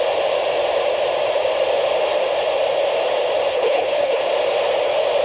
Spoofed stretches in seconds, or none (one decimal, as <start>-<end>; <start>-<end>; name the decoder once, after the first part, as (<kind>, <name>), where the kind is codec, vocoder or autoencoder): 3.5-4.2 (codec, HILCodec)